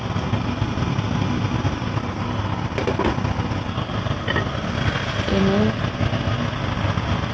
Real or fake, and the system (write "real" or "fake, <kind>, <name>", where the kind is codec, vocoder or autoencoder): real